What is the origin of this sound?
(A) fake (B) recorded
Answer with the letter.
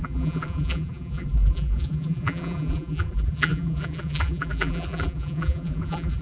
A